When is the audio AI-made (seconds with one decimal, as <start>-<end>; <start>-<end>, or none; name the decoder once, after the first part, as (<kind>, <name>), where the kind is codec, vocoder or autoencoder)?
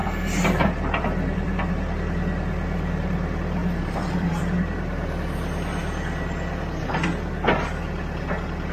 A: 0.0-1.7 (vocoder, BigVGAN v2); 3.6-4.3